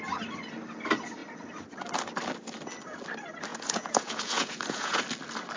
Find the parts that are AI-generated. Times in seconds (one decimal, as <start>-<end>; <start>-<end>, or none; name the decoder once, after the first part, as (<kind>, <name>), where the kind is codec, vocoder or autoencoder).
3.5-5.0 (vocoder, Vocos)